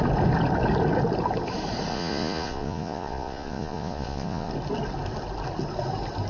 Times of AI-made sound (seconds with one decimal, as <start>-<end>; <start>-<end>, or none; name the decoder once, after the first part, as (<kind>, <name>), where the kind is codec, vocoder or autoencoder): 1.9-4.5 (vocoder, Vocos)